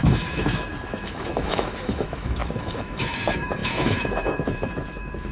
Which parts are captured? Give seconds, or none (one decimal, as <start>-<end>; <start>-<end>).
none

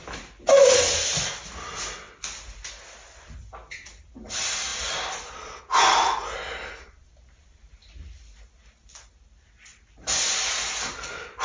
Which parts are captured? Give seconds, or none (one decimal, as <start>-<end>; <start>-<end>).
0.0-11.4

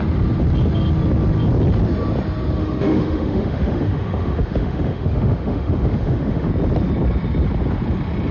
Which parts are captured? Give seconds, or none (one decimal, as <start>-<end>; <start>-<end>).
0.0-2.6; 6.5-8.3

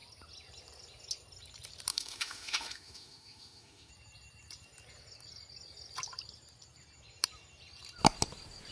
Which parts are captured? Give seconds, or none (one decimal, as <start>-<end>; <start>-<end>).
0.0-1.9; 3.9-8.7

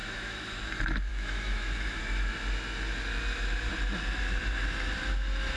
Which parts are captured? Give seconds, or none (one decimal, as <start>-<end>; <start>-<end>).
0.6-1.1; 2.0-5.6

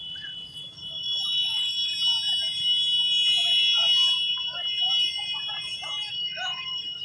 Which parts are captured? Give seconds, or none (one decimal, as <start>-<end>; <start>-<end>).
1.9-6.1

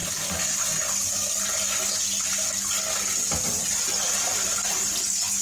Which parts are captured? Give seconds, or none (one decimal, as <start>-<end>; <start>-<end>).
0.0-5.4